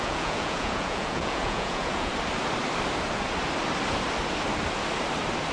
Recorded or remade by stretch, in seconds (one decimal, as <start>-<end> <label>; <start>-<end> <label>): 0.0-2.1 remade; 2.1-5.5 recorded